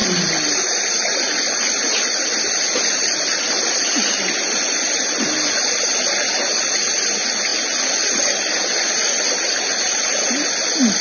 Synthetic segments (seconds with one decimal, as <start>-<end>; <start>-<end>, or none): none